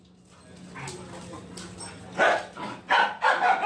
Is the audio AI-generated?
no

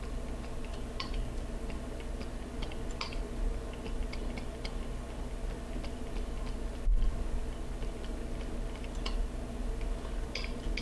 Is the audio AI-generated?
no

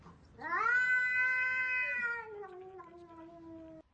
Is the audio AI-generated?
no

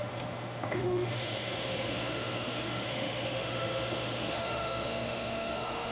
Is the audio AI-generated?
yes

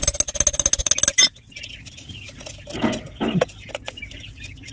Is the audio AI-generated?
no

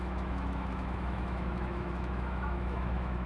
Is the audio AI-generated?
yes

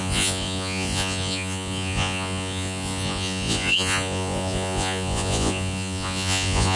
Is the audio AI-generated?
yes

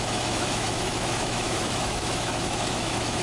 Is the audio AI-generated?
yes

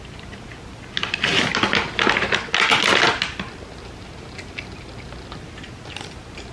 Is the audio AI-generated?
no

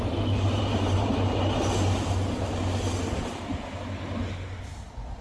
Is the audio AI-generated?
no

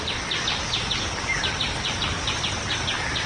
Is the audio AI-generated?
no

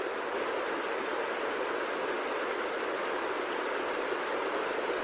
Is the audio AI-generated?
no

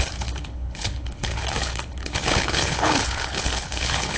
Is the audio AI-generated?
yes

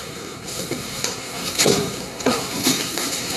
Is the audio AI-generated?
yes